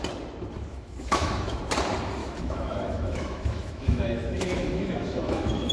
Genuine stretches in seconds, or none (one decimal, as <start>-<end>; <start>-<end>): 0.0-0.7; 1.6-2.2